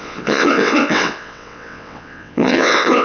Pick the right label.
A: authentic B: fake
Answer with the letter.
B